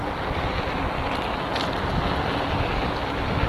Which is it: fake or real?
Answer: real